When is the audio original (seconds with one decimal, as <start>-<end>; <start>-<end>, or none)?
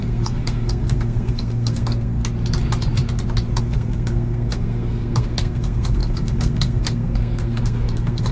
2.2-3.6